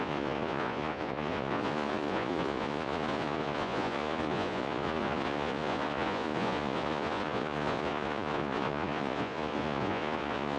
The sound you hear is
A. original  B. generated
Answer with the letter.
B